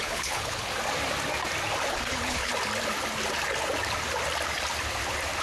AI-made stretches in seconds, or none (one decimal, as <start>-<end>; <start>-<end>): 0.0-0.7; 1.9-2.5